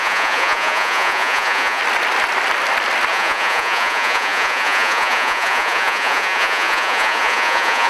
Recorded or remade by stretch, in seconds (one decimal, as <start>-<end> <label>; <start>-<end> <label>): 0.0-1.8 remade; 1.8-3.1 recorded; 3.1-7.9 remade

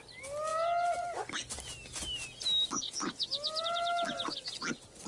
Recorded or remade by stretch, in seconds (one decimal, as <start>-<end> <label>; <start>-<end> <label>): 0.0-5.1 recorded

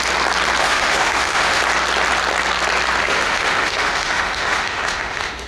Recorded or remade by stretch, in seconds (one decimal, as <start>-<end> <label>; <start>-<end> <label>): 0.0-0.6 recorded; 0.6-1.6 remade; 1.6-3.0 recorded; 3.0-5.5 remade

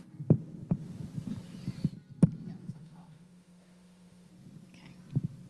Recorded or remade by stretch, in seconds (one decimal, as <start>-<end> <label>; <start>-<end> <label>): 0.0-2.6 recorded; 2.6-4.3 remade; 4.3-5.5 recorded

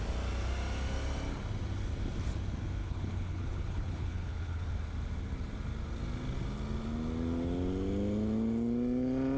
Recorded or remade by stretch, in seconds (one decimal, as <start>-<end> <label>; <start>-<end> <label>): 0.0-2.8 recorded; 2.8-4.7 remade; 4.7-9.4 recorded

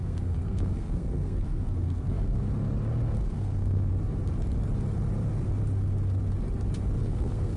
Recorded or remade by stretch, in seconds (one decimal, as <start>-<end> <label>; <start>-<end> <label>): 0.0-2.4 remade; 2.4-3.2 recorded; 3.2-3.9 remade; 3.9-7.0 recorded; 7.0-7.6 remade